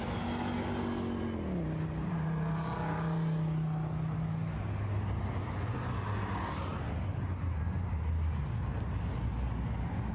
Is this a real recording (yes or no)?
yes